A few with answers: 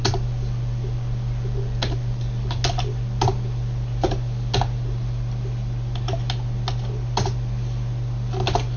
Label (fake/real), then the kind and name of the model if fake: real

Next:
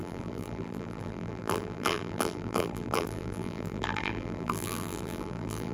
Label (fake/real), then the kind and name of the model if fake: fake, vocoder, BigVGAN v2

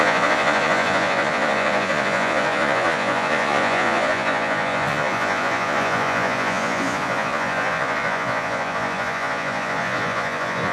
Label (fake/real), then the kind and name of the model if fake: fake, vocoder, Vocos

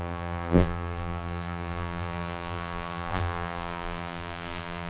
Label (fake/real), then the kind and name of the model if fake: fake, vocoder, BigVGAN v2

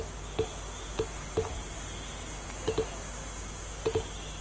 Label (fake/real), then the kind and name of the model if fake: real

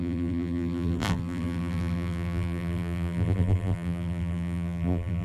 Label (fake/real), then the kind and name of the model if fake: fake, vocoder, BigVGAN v2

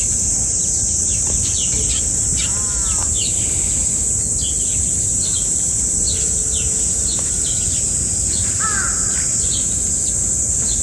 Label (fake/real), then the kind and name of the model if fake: real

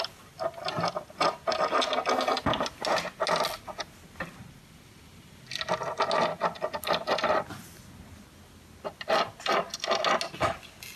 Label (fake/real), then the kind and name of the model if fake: real